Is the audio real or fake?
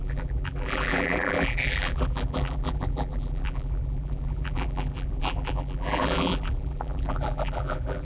fake